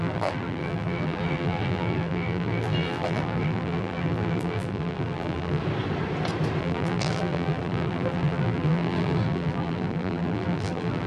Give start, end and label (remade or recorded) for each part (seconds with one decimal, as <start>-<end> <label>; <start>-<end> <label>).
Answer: 0.0-5.6 remade; 5.6-6.6 recorded; 6.6-11.1 remade

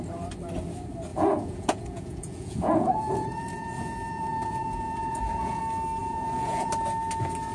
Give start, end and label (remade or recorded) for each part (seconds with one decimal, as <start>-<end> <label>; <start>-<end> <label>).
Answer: 0.0-1.1 recorded; 1.1-5.6 remade; 5.6-6.0 recorded; 6.0-6.7 remade; 6.7-7.5 recorded

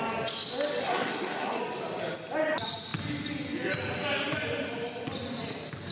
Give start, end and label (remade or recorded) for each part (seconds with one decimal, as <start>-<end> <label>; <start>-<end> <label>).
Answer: 0.0-0.8 recorded; 0.8-1.6 remade; 1.6-5.9 recorded

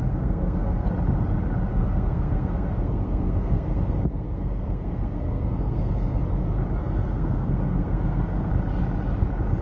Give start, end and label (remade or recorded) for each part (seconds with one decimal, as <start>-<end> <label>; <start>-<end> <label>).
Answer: 0.0-0.9 remade; 0.9-1.7 recorded; 1.7-6.2 remade; 6.2-6.8 recorded; 6.8-8.5 remade; 8.5-9.6 recorded

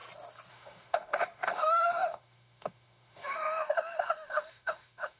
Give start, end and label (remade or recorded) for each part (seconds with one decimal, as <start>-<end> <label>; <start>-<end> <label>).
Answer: 0.0-0.5 recorded; 0.5-5.2 remade

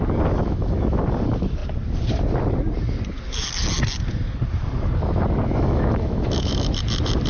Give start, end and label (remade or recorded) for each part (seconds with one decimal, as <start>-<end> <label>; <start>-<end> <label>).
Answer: 0.0-0.4 recorded; 0.4-1.0 remade; 1.0-5.4 recorded; 5.4-6.5 remade; 6.5-7.3 recorded

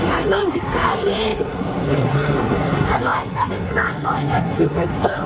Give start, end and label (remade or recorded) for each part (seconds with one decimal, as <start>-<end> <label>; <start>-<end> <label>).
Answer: 0.0-5.3 remade

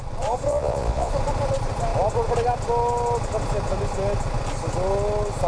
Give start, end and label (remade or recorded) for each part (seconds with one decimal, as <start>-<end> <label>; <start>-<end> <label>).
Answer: 0.0-0.5 recorded; 0.5-1.1 remade; 1.1-5.5 recorded